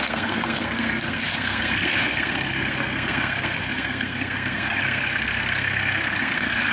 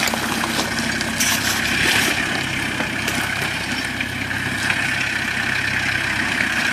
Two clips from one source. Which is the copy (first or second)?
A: first